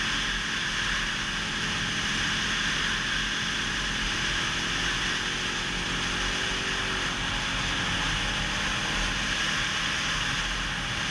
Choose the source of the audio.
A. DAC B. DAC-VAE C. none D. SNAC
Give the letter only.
C